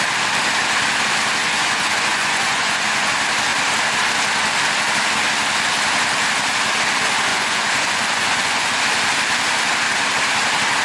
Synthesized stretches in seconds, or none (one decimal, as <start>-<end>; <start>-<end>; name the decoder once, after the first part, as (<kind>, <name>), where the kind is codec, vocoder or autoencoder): 1.4-3.1 (vocoder, Vocos); 7.3-8.8